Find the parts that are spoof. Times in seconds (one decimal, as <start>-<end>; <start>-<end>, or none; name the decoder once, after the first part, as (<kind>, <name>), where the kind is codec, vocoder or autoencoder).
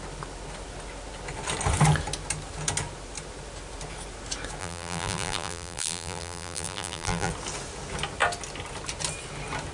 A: 4.6-7.3 (vocoder, BigVGAN v2)